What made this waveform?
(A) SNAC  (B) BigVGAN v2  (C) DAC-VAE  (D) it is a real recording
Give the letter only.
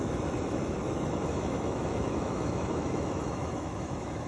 C